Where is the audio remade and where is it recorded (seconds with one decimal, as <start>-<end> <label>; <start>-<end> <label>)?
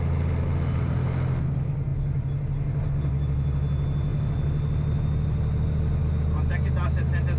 0.0-7.4 recorded